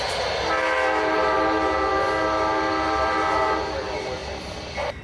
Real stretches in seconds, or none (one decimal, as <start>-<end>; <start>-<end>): 0.0-5.0